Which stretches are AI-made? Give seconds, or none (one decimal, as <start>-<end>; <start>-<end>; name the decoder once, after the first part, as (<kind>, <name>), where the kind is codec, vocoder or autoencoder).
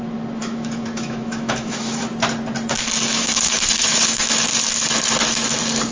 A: 0.4-2.0 (autoencoder, DAC-VAE); 3.1-4.4